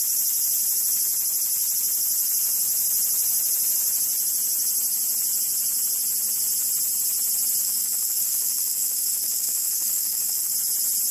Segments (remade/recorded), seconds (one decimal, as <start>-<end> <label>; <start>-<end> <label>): 0.0-7.6 recorded; 7.6-10.5 remade; 10.5-11.1 recorded